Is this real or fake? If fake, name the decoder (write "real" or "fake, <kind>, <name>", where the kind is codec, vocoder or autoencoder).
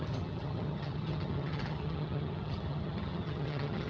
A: fake, vocoder, HiFi-GAN